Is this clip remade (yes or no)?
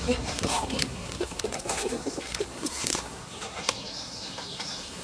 yes